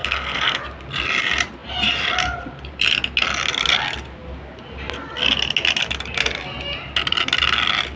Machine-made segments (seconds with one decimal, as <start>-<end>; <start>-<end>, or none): 0.0-0.6